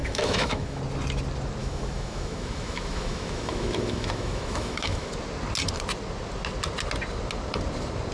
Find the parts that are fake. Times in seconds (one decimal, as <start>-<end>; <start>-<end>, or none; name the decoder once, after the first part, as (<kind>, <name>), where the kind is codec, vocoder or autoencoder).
0.0-0.8 (autoencoder, DAC-VAE); 1.6-5.1